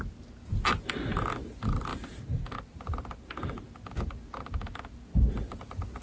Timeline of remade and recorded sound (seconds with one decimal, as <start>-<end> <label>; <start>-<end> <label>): 0.0-6.0 recorded